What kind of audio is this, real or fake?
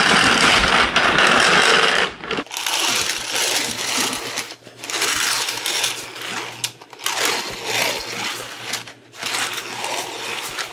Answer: real